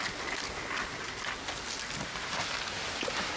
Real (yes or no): yes